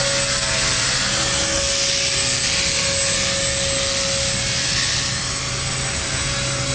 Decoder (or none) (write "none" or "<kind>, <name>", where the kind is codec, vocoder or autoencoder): none